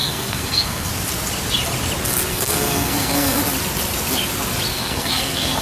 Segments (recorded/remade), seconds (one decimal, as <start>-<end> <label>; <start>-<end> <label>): 0.0-0.9 remade; 0.9-2.3 recorded; 2.3-3.4 remade; 3.4-4.7 recorded; 4.7-5.6 remade